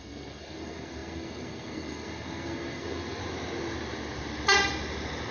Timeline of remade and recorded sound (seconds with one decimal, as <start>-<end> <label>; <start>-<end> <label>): 0.0-3.2 remade; 3.2-5.3 recorded